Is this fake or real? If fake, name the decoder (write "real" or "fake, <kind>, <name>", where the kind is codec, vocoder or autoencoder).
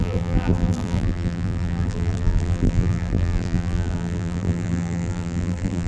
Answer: fake, vocoder, BigVGAN v2